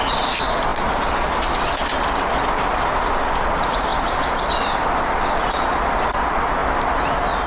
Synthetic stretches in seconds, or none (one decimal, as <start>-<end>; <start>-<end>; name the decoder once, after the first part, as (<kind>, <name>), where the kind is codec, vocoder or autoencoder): none